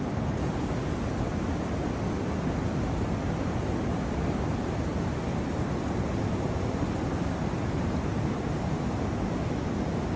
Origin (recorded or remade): recorded